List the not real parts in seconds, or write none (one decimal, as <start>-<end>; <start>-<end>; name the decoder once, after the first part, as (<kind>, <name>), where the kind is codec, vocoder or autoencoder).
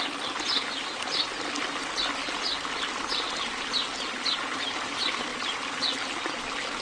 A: none